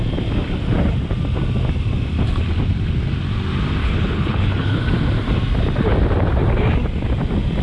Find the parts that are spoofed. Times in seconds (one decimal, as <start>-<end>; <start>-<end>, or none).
3.8-4.8